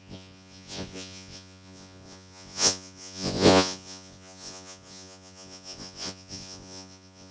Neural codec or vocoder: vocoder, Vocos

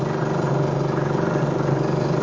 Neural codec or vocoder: none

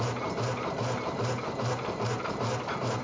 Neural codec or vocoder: vocoder, BigVGAN v2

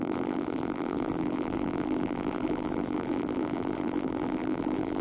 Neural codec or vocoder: vocoder, BigVGAN v2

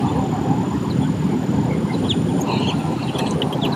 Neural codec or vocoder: none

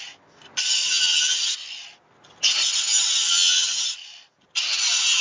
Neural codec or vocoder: none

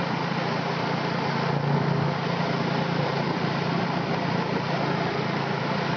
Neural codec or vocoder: none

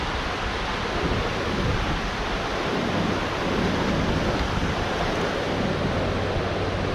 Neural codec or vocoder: none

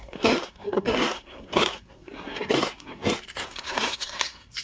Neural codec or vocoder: codec, SNAC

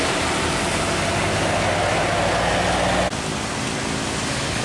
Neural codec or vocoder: none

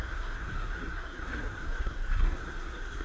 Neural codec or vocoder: codec, SNAC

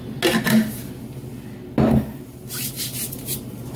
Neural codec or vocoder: none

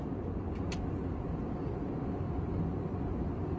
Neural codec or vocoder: none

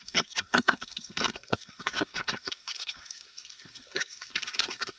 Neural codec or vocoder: codec, SNAC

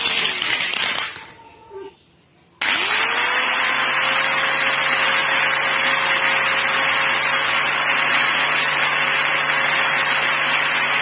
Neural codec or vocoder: none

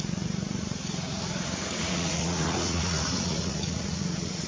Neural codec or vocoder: vocoder, Vocos